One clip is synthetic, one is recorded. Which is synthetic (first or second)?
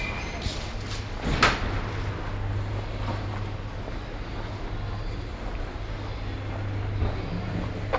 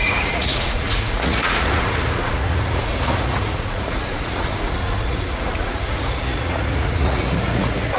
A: second